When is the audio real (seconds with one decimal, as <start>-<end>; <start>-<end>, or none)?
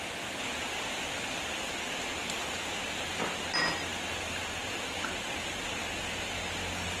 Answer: 0.0-7.0